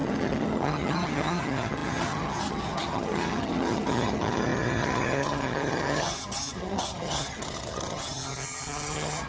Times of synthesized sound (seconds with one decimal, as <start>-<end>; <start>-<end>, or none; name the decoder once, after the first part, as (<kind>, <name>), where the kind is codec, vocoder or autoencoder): 0.0-9.3 (vocoder, HiFi-GAN)